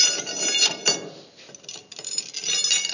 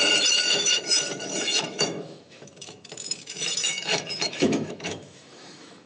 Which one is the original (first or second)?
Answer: first